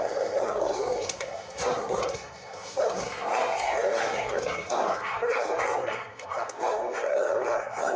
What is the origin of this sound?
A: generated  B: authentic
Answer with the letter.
A